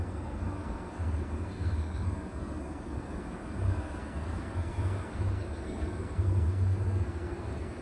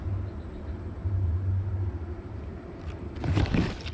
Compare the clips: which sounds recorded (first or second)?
second